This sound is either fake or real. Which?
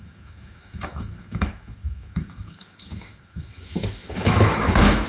fake